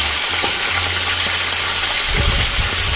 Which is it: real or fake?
real